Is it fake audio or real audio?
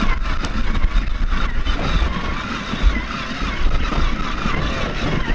real